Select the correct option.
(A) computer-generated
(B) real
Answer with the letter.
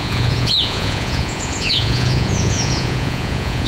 A